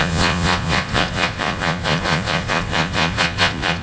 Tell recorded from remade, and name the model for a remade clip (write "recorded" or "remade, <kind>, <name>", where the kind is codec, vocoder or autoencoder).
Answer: remade, vocoder, Vocos